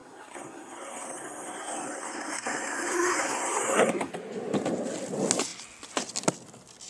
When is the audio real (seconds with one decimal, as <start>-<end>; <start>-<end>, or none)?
4.1-6.9